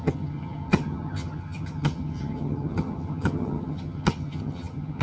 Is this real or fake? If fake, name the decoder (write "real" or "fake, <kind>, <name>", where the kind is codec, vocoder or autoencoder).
fake, vocoder, HiFi-GAN